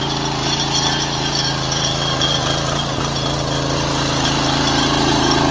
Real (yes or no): yes